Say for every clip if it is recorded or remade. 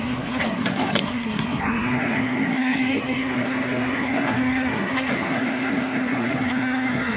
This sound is remade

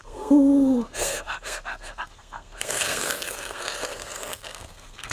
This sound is remade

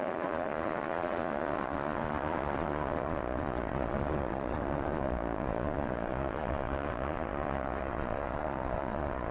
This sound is remade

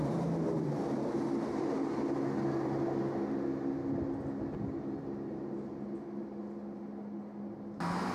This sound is recorded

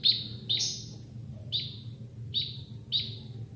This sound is recorded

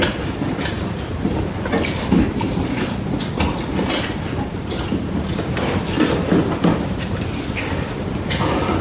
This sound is recorded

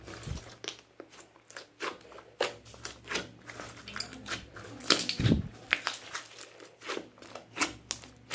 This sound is recorded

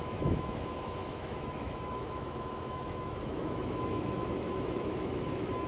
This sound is remade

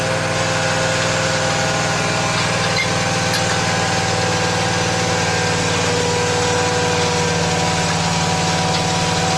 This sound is remade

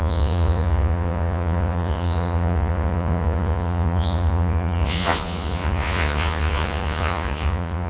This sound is remade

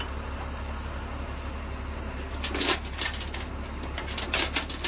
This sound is recorded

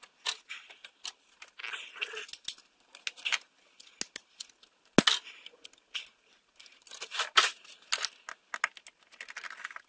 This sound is recorded